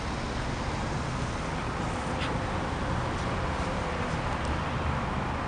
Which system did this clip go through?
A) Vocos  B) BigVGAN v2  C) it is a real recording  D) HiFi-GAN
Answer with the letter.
C